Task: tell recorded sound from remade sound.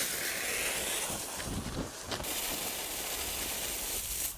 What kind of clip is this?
recorded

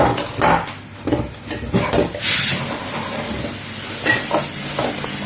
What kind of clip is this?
recorded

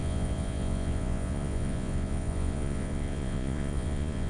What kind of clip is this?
remade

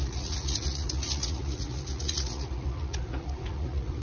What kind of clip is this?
remade